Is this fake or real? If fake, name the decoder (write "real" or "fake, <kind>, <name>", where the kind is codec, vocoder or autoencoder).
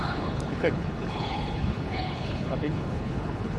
fake, codec, HILCodec